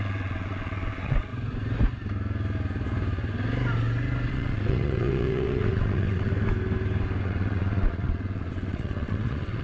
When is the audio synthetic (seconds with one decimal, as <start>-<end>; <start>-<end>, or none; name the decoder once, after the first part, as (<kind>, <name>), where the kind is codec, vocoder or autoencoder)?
0.0-1.3 (vocoder, WaveNeXt); 4.3-6.3; 7.2-9.6